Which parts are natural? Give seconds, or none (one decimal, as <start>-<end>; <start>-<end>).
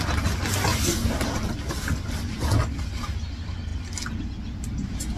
0.0-5.2